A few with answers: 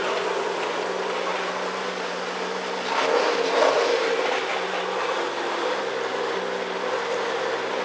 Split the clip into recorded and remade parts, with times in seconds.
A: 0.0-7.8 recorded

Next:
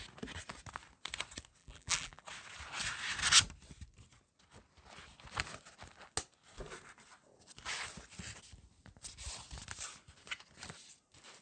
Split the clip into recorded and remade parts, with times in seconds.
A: 0.0-1.6 recorded; 1.6-2.2 remade; 2.2-11.4 recorded

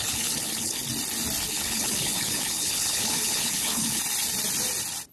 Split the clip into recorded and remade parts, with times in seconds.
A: 0.0-0.8 remade; 0.8-1.5 recorded; 1.5-4.0 remade; 4.0-5.1 recorded

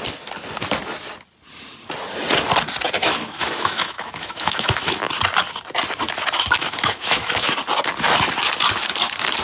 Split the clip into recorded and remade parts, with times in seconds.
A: 0.0-3.0 recorded; 3.0-5.1 remade; 5.1-6.6 recorded; 6.6-7.5 remade; 7.5-9.4 recorded

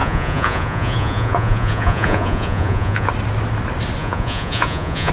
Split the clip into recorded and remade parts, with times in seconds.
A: 0.0-3.1 remade; 3.1-4.0 recorded; 4.0-5.1 remade

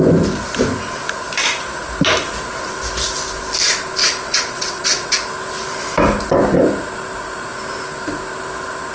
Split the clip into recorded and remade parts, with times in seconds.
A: 0.0-4.0 recorded; 4.0-5.1 remade; 5.1-8.9 recorded

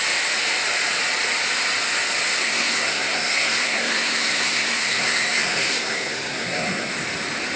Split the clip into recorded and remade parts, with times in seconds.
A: 0.0-2.4 recorded; 2.4-6.9 remade; 6.9-7.6 recorded